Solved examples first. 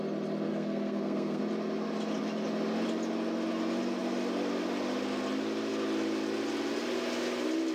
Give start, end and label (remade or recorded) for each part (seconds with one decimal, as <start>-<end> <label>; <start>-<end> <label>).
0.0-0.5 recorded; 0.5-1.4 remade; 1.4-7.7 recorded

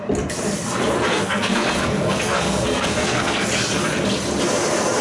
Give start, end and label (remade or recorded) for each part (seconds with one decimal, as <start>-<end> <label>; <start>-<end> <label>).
0.0-1.1 recorded; 1.1-3.5 remade; 3.5-5.0 recorded

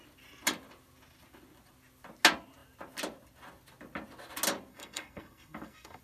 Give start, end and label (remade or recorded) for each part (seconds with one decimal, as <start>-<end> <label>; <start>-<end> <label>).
0.0-4.7 recorded; 4.7-6.0 remade

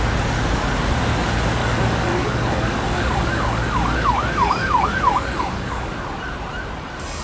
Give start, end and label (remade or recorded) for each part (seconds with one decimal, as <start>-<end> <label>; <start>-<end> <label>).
0.0-1.6 recorded; 1.6-5.9 remade; 5.9-7.2 recorded

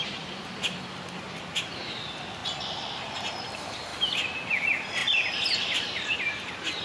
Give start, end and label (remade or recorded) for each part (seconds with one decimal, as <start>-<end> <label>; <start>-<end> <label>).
0.0-2.4 remade; 2.4-3.0 recorded; 3.0-3.9 remade; 3.9-4.5 recorded; 4.5-5.0 remade; 5.0-5.6 recorded; 5.6-6.8 remade